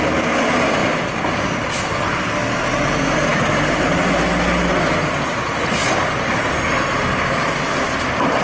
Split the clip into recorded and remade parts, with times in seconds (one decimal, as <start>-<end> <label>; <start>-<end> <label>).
0.0-8.4 recorded